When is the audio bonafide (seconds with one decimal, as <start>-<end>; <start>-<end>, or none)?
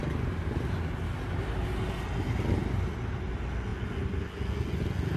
0.0-5.2